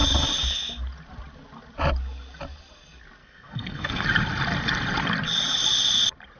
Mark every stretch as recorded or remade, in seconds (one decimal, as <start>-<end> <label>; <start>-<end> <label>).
0.0-3.2 recorded; 3.2-4.0 remade; 4.0-6.4 recorded